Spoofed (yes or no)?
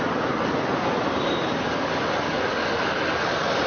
no